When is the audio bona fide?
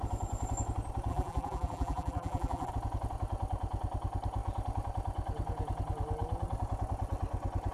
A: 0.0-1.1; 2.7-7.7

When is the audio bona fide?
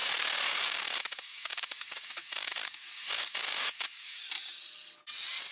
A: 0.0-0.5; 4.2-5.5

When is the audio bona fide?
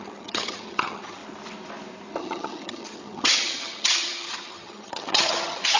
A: 1.2-2.2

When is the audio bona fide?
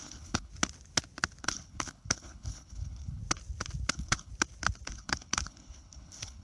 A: 0.5-1.4; 3.2-3.9; 4.3-4.9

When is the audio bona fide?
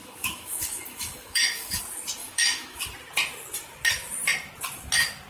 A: 1.8-2.2; 2.8-5.3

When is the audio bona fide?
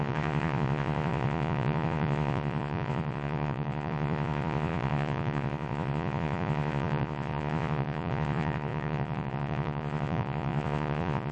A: none